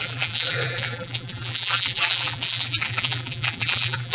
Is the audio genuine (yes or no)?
no